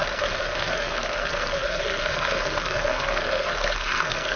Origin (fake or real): fake